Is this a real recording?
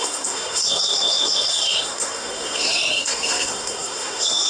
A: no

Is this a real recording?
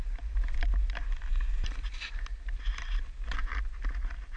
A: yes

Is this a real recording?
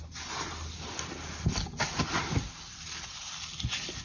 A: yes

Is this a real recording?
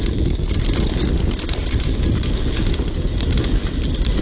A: yes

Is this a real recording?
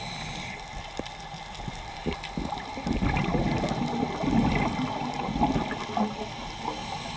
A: yes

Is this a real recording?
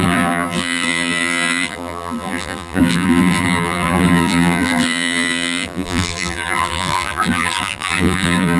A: no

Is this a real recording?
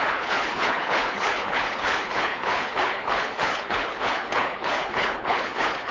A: no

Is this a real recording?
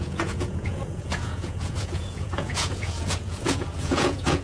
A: no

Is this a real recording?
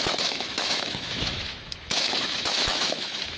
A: no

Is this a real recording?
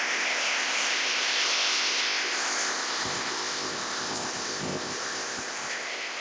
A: no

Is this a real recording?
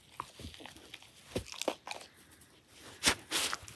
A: yes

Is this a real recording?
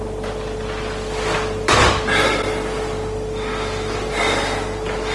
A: yes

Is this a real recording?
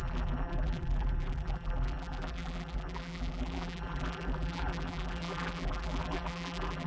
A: no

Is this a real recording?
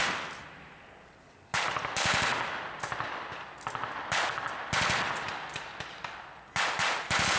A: yes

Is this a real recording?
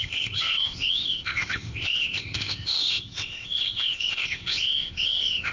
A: no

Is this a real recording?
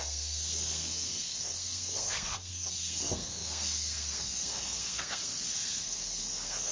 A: no